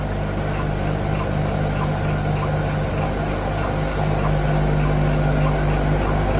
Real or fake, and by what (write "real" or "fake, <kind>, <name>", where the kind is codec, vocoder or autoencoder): real